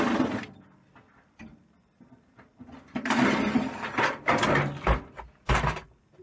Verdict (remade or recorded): recorded